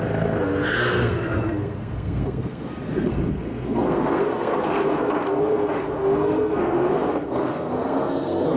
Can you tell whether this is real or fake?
fake